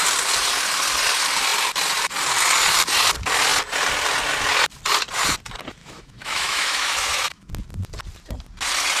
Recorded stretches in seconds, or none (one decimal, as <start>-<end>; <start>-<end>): 0.0-5.8; 7.5-9.0